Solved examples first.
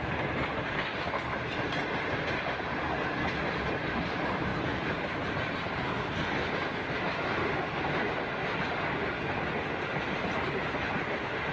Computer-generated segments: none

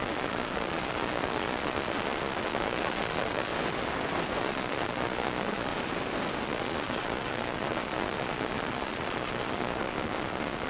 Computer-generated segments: 0.0-3.5 (vocoder, Vocos); 4.4-5.7; 6.4-10.7

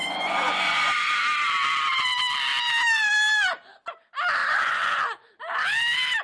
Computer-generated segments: 0.0-1.2 (vocoder, Vocos); 4.4-4.9

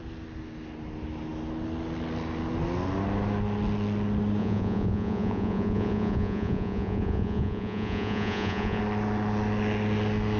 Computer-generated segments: 4.4-8.8 (vocoder, Vocos)

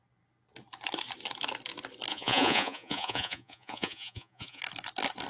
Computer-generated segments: 2.1-4.6 (vocoder, Vocos)

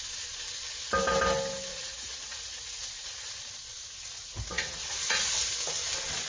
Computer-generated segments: 1.7-3.3 (vocoder, Vocos); 4.2-5.3

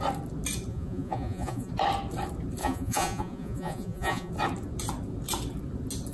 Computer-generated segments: 0.7-1.7 (vocoder, Vocos); 2.6-4.3

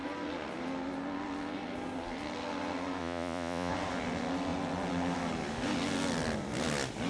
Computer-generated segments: 3.0-3.7 (vocoder, Vocos)